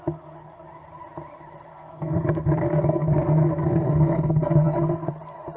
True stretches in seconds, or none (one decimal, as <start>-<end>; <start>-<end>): 0.0-1.7; 5.1-5.6